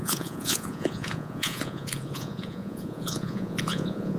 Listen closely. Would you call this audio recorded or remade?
remade